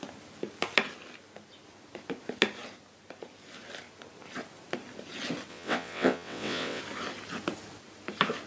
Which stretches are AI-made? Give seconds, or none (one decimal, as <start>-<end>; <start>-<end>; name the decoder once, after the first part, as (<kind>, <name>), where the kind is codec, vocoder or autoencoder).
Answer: 5.5-6.8 (vocoder, WaveNeXt)